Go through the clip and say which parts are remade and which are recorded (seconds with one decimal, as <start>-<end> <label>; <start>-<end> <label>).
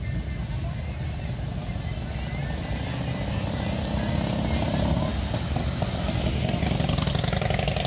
0.0-7.9 recorded